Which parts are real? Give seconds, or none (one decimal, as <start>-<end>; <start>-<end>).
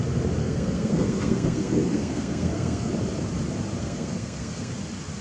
0.0-0.4; 2.9-3.8; 4.7-5.2